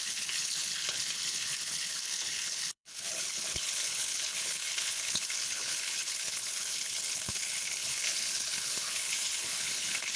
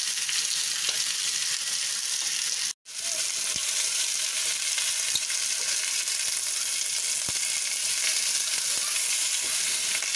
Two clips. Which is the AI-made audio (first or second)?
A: first